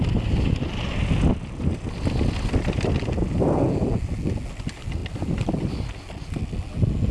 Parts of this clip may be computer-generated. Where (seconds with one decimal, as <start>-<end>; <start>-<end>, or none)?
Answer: none